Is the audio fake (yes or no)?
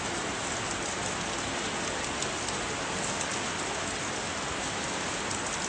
no